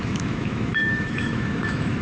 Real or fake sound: fake